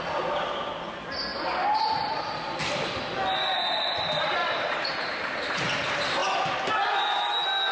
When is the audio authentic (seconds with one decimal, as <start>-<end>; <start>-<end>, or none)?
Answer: 0.0-4.4; 5.6-7.7